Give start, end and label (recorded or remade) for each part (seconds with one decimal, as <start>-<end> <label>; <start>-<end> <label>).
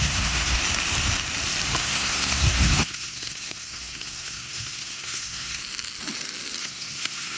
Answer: 0.0-0.6 remade; 0.6-1.8 recorded; 1.8-5.6 remade; 5.6-6.6 recorded; 6.6-7.4 remade